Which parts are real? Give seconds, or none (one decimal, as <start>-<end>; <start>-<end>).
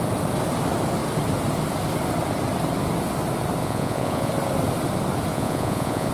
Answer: 0.0-3.6; 4.3-5.3